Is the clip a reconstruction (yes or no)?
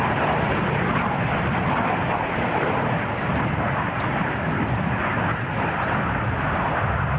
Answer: no